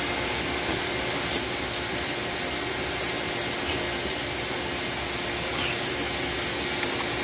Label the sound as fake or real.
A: real